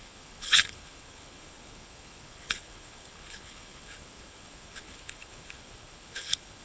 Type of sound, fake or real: fake